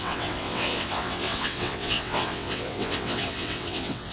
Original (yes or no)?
no